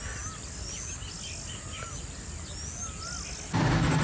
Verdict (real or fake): real